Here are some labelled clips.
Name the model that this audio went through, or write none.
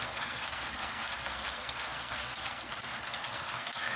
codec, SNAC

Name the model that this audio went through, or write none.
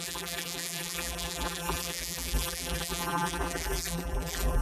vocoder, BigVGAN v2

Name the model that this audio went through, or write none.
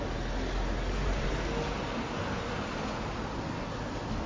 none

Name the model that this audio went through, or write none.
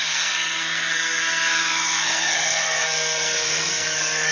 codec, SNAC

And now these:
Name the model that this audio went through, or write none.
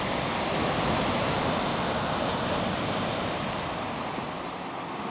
none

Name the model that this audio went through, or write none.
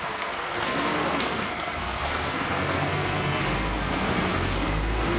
codec, SNAC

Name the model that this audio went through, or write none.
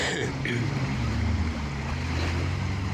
vocoder, BigVGAN v2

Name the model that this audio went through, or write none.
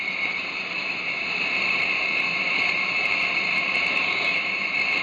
vocoder, BigVGAN v2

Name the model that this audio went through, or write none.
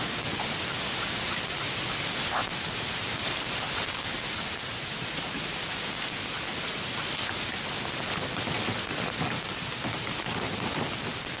none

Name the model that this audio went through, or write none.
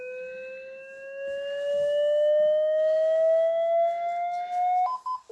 none